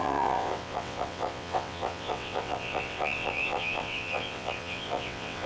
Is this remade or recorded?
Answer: remade